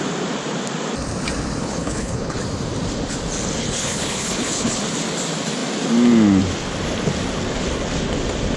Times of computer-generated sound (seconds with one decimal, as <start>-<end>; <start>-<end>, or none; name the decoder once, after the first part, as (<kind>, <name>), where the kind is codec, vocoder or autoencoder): 1.6-2.4 (codec, HILCodec); 3.6-4.8